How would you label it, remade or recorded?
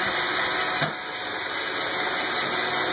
recorded